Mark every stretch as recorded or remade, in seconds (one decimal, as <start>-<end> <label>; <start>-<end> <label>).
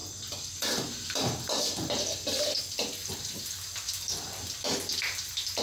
0.0-2.6 remade; 2.6-3.0 recorded; 3.0-4.0 remade; 4.0-5.6 recorded